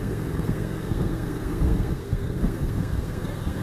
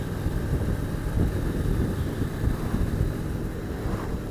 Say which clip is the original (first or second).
second